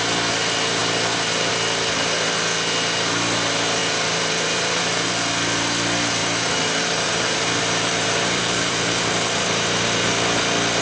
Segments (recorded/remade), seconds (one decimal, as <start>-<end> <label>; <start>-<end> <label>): 0.0-3.8 recorded; 3.8-5.1 remade; 5.1-6.2 recorded; 6.2-10.1 remade; 10.1-10.8 recorded